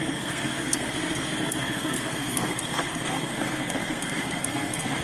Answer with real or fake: fake